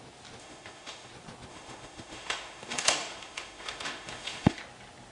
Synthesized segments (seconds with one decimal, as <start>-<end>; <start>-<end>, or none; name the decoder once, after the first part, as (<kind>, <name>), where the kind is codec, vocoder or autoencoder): 0.4-1.1 (autoencoder, DAC-VAE); 1.5-4.6